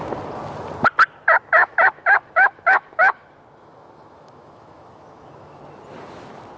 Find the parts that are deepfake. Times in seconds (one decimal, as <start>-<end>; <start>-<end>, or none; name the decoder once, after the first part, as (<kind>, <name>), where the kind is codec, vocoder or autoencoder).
1.6-5.6 (autoencoder, DAC-VAE)